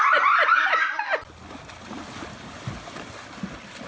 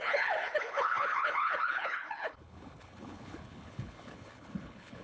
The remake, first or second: second